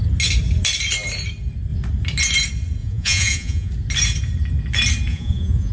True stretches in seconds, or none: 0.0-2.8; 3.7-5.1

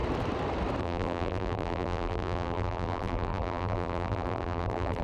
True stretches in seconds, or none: 0.0-0.8

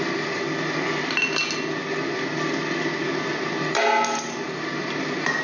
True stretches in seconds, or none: 0.0-5.4